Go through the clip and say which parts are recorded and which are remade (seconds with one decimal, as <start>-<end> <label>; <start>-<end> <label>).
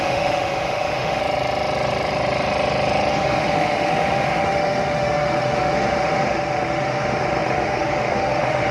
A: 0.0-1.2 remade; 1.2-3.1 recorded; 3.1-8.7 remade